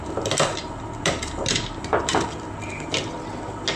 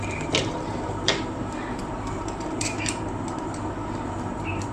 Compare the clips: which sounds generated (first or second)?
second